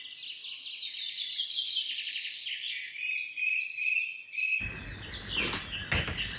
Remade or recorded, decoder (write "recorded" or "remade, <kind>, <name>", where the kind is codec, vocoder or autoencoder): recorded